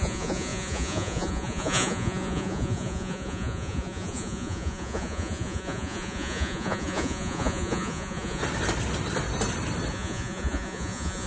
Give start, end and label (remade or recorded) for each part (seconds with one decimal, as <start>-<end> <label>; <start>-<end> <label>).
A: 0.0-8.4 remade; 8.4-9.9 recorded; 9.9-11.3 remade